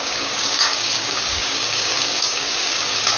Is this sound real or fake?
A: fake